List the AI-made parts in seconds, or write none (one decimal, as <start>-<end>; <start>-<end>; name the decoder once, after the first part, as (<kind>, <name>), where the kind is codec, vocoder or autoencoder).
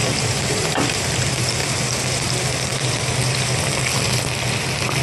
0.0-1.0 (vocoder, BigVGAN v2)